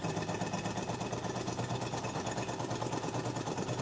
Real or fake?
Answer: real